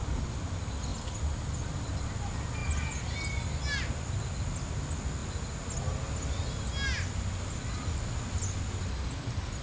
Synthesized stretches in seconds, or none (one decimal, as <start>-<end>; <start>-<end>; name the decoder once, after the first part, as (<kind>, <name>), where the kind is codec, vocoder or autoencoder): none